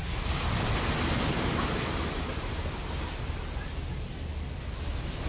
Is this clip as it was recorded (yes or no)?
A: yes